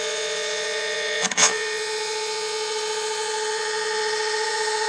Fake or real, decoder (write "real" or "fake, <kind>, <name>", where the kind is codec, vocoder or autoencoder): fake, vocoder, Vocos